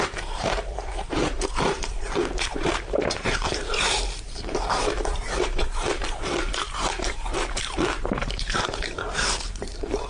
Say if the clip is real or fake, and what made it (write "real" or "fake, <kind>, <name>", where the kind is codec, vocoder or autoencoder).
fake, vocoder, BigVGAN v2